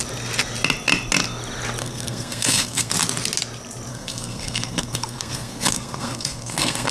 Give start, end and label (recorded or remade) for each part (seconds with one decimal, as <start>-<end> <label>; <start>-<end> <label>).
0.0-1.8 recorded; 1.8-2.9 remade; 2.9-3.9 recorded; 3.9-6.9 remade